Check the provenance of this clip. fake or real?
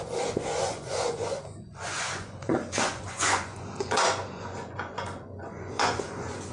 fake